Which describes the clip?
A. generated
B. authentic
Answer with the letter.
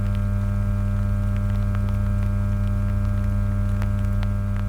B